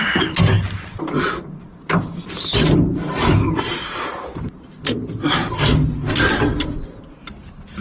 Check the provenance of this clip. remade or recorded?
remade